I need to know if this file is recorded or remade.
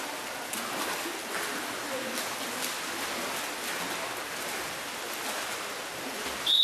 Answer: recorded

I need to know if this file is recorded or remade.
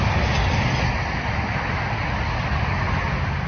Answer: recorded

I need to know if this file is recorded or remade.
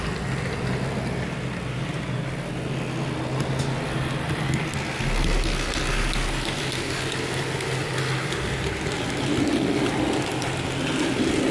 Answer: recorded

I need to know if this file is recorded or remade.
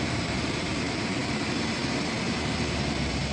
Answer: remade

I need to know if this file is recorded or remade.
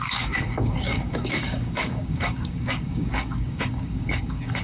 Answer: remade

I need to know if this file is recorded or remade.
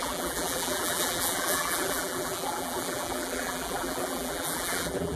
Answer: remade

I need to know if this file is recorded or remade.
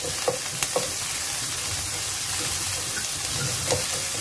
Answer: recorded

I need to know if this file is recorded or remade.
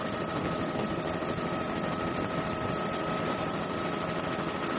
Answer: remade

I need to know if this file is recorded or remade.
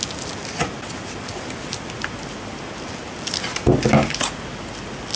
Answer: recorded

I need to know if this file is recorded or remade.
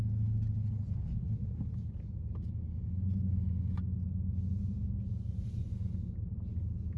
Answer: recorded